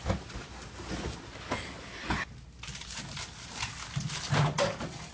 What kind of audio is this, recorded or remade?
recorded